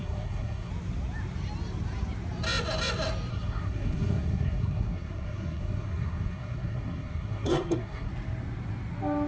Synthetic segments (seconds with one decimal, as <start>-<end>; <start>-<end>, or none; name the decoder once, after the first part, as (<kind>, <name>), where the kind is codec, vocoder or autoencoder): 0.0-0.7 (codec, SNAC); 3.3-8.1

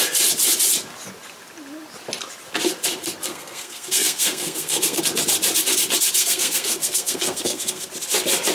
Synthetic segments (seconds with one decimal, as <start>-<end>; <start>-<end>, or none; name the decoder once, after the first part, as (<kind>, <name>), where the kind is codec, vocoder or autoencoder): 3.3-5.0 (codec, SNAC); 6.2-7.9

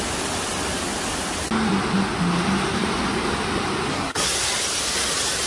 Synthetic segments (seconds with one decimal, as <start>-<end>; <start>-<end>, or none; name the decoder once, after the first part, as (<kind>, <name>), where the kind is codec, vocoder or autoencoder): 3.9-4.5 (codec, SNAC)

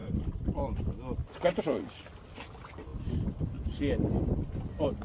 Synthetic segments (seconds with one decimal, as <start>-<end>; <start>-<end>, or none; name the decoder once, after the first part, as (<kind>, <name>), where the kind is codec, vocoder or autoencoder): none

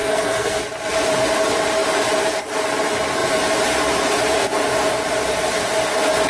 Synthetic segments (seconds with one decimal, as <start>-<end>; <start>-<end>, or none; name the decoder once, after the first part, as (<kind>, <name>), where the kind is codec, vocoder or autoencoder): 0.0-0.6 (codec, SNAC)

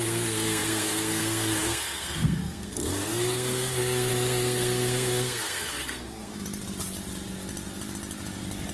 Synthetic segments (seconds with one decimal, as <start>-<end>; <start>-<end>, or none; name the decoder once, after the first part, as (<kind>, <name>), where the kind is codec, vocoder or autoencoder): 0.0-6.3 (codec, SNAC)

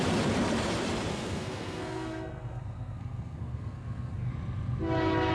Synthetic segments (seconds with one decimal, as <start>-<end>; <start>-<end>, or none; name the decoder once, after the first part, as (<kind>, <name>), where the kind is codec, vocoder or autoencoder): 1.1-4.3 (codec, SNAC)